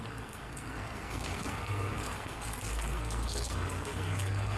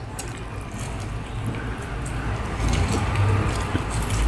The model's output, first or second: first